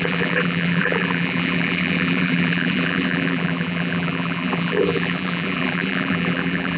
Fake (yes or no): yes